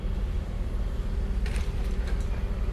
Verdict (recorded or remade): remade